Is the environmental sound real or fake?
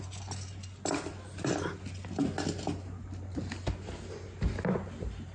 real